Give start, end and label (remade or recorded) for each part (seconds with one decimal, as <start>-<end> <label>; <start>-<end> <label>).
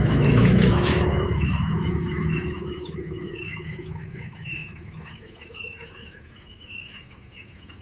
0.0-7.8 remade